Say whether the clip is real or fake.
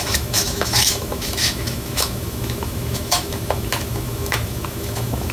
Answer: fake